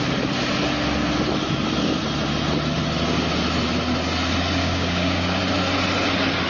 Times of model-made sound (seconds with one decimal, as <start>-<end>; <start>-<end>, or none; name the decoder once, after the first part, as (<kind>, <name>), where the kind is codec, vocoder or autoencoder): 4.6-5.4 (codec, DAC)